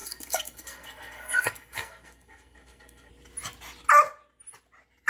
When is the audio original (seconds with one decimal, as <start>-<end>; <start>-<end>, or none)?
3.1-5.1